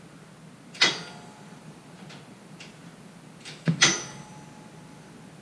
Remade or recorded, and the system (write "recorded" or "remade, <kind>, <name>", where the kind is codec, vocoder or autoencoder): recorded